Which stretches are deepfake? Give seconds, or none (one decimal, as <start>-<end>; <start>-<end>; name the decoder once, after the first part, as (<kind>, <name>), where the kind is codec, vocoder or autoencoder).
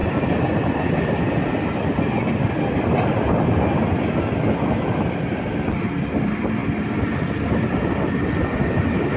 none